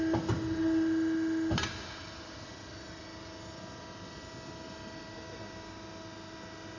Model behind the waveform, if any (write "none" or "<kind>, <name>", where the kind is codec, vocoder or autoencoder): none